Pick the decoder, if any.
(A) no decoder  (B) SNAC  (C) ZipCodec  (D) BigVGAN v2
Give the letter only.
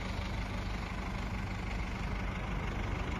A